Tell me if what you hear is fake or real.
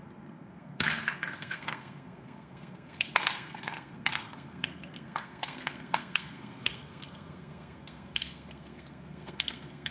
fake